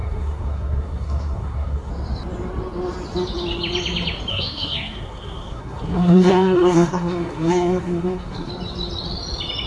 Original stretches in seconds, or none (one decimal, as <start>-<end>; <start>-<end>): 1.9-4.3; 8.5-9.7